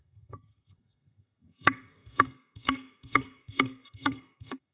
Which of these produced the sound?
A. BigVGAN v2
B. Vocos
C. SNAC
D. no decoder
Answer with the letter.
C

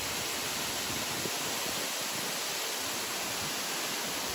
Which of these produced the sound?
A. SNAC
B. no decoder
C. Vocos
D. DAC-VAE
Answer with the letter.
B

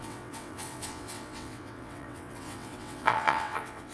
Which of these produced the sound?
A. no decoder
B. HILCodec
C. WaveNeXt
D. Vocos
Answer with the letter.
C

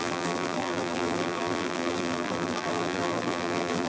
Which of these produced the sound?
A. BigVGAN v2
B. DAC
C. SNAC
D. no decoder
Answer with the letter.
A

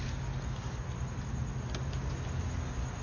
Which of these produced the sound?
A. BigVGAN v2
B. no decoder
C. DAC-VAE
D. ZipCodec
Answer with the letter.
B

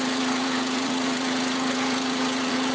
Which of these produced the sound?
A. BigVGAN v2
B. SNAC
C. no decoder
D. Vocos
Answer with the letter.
D